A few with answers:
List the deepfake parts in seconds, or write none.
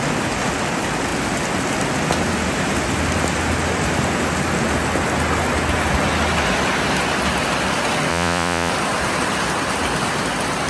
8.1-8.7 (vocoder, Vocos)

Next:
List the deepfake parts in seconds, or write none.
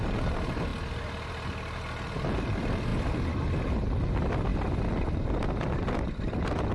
none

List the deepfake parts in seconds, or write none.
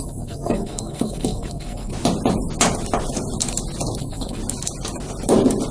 0.0-1.9 (codec, SNAC); 4.0-4.4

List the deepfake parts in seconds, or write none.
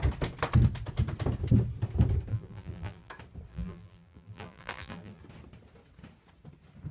2.3-3.1 (vocoder, BigVGAN v2); 3.5-5.2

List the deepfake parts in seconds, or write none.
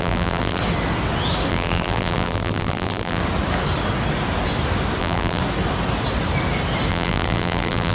0.0-0.6 (vocoder, BigVGAN v2); 1.5-3.2; 5.0-5.4; 6.9-7.9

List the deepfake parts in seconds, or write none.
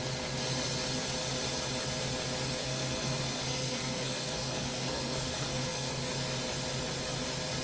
2.6-6.1 (codec, SNAC)